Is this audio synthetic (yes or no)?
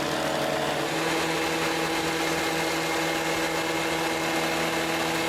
no